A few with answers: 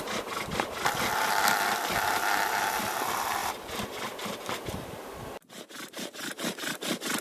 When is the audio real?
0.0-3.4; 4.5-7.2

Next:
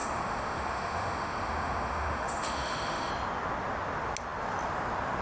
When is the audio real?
3.1-5.2

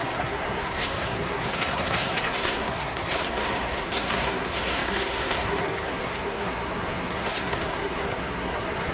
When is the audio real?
none

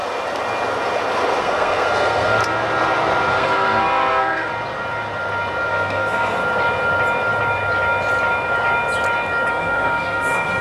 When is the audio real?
0.0-1.4; 2.4-3.3; 4.5-5.7; 6.4-9.5

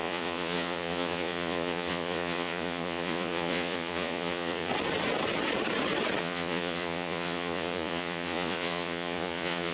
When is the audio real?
4.7-6.2